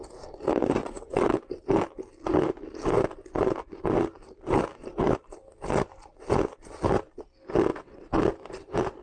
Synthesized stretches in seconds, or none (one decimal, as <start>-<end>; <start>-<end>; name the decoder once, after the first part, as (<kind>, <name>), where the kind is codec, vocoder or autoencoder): 0.8-1.4 (vocoder, WaveNeXt); 7.7-8.2